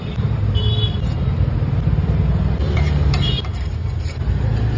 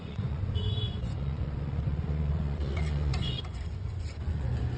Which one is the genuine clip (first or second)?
first